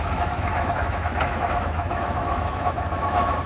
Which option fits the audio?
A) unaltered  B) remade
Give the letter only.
B